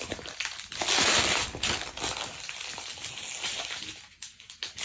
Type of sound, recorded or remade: recorded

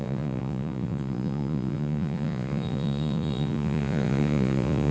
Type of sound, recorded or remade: remade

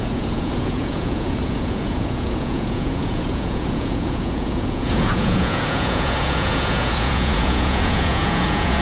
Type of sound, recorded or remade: remade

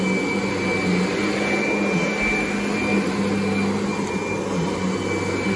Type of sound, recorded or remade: recorded